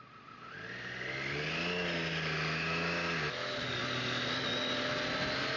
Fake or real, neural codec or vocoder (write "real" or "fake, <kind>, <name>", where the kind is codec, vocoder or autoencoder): real